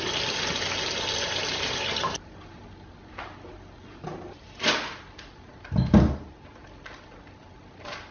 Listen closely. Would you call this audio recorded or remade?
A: recorded